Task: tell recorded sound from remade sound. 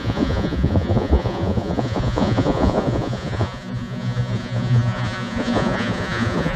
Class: remade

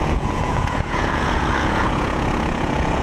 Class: remade